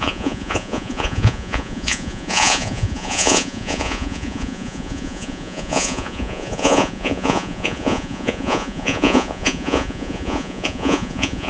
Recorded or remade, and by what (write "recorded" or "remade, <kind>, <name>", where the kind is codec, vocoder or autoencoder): remade, vocoder, Vocos